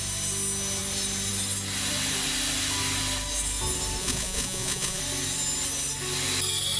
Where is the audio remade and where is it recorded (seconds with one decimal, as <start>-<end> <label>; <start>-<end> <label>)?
0.0-4.0 recorded; 4.0-5.0 remade; 5.0-6.8 recorded